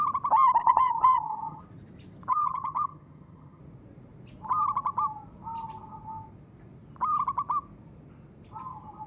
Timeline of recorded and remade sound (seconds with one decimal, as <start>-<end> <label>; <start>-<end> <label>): 0.0-0.6 recorded; 0.6-1.6 remade; 1.6-2.3 recorded; 2.3-3.6 remade; 3.6-9.1 recorded